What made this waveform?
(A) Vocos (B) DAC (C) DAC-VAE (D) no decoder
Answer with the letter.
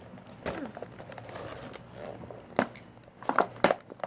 D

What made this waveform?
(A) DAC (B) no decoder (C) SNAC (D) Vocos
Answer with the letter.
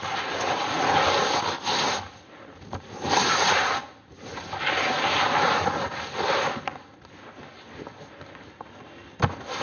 B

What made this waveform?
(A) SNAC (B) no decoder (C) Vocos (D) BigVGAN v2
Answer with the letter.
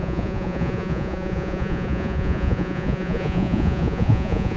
C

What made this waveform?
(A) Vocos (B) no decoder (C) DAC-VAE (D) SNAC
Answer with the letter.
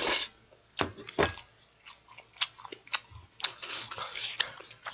B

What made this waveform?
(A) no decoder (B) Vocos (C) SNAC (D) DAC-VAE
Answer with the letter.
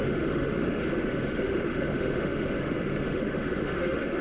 D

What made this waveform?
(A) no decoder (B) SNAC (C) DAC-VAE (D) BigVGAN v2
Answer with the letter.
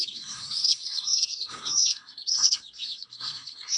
B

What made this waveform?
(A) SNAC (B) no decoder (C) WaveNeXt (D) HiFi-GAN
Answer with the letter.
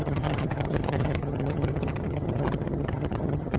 D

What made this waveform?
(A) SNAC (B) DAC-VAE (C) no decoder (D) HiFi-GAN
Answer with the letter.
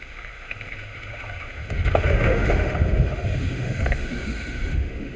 B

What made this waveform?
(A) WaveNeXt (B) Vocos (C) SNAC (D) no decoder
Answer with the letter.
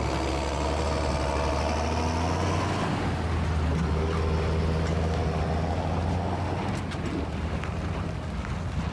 D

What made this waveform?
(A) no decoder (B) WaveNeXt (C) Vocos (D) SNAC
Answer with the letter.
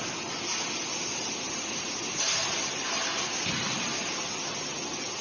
A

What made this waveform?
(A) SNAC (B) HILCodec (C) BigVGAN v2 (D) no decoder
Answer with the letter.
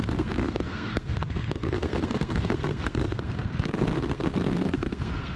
A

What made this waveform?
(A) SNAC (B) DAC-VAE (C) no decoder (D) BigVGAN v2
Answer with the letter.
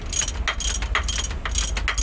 C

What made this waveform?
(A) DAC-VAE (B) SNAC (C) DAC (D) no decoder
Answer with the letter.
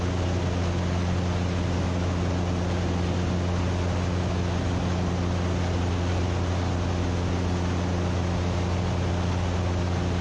D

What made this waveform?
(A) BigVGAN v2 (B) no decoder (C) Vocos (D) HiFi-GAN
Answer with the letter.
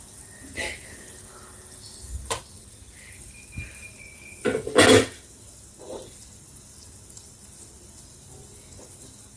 B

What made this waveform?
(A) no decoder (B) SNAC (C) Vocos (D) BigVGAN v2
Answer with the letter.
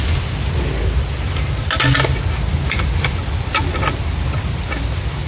A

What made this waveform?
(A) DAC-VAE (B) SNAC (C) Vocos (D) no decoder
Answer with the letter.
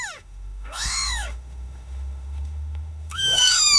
A